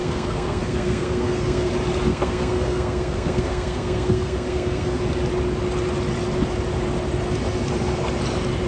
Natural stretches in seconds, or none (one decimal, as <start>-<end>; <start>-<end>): 1.7-2.1; 5.0-8.7

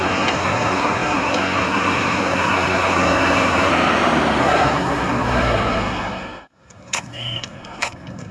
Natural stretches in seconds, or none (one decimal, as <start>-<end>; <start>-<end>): 3.7-4.4

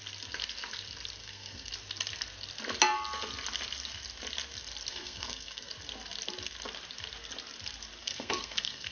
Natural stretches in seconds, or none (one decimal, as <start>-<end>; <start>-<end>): 0.0-1.2; 1.7-4.9; 5.7-8.0

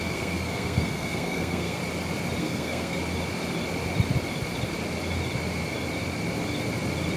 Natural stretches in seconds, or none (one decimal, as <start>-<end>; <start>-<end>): 1.8-2.4; 3.0-7.2